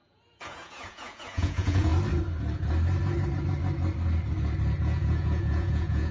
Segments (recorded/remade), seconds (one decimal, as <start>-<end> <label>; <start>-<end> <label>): 0.0-1.9 remade; 1.9-4.8 recorded; 4.8-6.1 remade